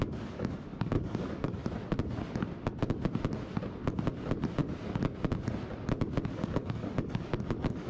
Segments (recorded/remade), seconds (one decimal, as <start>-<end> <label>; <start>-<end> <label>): 0.0-1.6 remade; 1.6-6.3 recorded; 6.3-7.9 remade